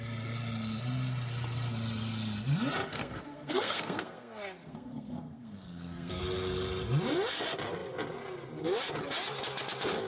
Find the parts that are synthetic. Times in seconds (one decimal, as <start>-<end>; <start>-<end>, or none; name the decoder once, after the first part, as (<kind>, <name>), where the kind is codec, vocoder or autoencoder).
2.9-6.2 (codec, SNAC)